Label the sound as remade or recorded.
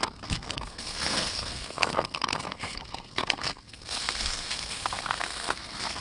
remade